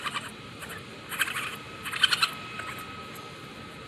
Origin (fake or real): real